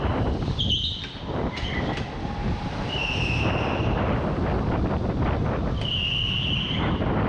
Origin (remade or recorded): recorded